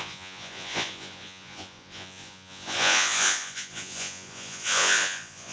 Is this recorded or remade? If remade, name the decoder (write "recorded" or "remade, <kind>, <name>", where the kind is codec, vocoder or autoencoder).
remade, vocoder, Vocos